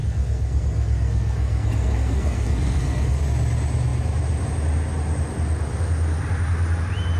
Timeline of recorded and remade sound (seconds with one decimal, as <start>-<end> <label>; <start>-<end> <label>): 0.0-3.2 remade; 3.2-7.2 recorded